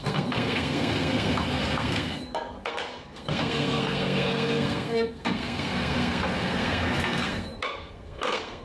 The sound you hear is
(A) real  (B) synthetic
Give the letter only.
B